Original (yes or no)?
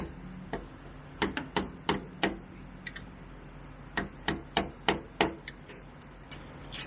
yes